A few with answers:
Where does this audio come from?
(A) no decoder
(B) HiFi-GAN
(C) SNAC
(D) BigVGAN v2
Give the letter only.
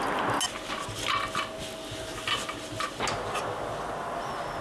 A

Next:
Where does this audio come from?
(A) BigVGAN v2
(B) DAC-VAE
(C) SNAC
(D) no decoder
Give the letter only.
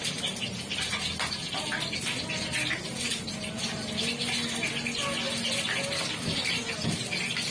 D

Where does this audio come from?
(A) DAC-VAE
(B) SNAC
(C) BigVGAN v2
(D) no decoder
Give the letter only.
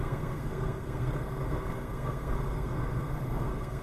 B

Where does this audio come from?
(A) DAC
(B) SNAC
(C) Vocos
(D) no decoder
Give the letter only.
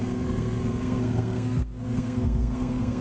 B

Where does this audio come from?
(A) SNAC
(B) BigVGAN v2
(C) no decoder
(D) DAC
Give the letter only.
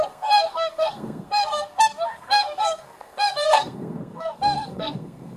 A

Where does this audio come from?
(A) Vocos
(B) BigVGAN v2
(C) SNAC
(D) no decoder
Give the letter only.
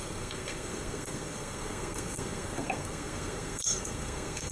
C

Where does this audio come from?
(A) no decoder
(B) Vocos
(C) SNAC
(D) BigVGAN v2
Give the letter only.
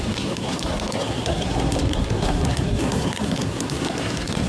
C